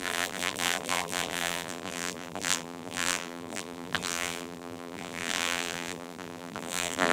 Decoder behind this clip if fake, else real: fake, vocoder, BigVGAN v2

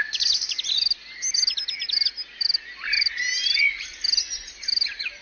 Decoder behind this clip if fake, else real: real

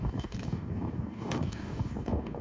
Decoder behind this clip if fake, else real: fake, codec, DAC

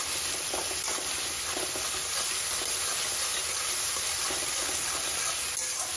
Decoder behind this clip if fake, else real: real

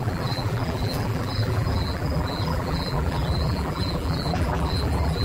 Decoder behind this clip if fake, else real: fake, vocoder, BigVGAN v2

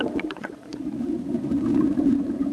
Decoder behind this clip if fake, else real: fake, vocoder, Vocos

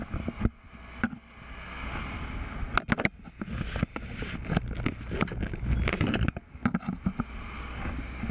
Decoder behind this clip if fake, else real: real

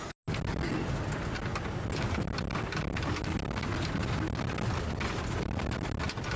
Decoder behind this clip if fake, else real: real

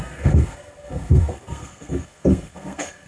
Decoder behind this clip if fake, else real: fake, codec, SNAC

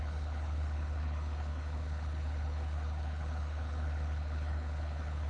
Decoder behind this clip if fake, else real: fake, codec, HILCodec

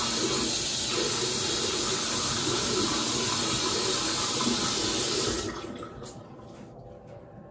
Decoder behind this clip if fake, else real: real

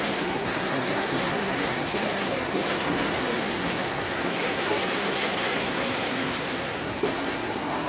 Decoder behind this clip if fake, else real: fake, codec, SNAC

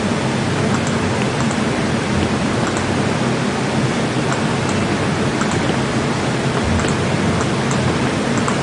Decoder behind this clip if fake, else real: real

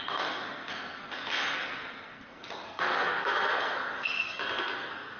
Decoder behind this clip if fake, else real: fake, codec, SNAC